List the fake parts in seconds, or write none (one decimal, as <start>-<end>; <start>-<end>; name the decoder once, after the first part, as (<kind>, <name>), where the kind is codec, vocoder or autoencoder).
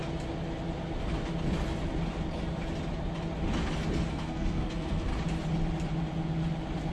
4.1-5.1 (codec, SNAC)